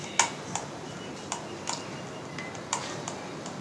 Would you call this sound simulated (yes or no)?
no